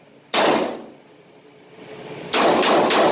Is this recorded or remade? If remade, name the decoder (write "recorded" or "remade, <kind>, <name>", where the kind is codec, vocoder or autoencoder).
recorded